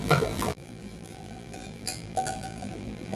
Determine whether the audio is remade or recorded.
remade